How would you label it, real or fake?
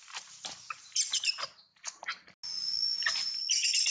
real